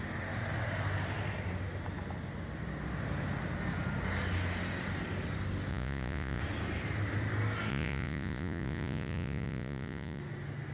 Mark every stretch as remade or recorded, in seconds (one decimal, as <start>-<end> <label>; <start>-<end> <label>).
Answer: 0.0-5.7 recorded; 5.7-6.4 remade; 6.4-7.7 recorded; 7.7-10.2 remade; 10.2-10.7 recorded